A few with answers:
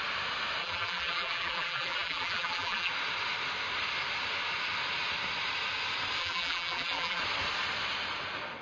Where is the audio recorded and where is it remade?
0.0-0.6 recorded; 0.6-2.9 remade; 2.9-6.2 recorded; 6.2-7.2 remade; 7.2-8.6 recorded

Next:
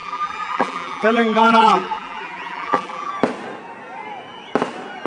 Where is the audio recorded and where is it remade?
0.0-3.1 remade; 3.1-5.1 recorded

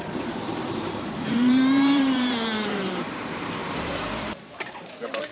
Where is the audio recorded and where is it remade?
0.0-5.3 remade

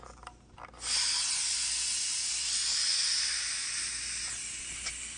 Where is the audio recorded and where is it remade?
0.0-5.2 recorded

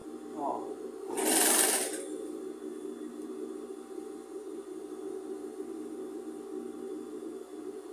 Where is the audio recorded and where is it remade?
0.0-7.9 recorded

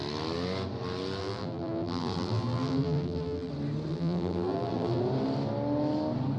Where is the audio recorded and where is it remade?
0.0-1.2 recorded; 1.2-3.5 remade; 3.5-3.9 recorded; 3.9-5.0 remade; 5.0-6.4 recorded